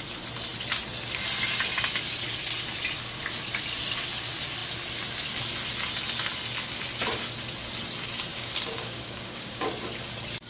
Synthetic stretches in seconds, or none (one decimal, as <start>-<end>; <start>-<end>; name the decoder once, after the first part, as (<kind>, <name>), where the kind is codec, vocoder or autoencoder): 8.3-9.7 (codec, DAC)